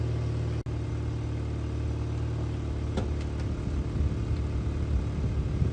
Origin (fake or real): real